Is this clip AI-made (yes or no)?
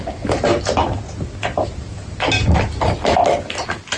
no